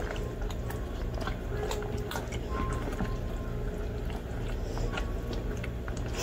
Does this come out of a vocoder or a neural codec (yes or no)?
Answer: no